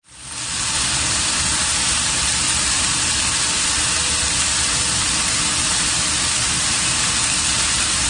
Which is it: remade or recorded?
recorded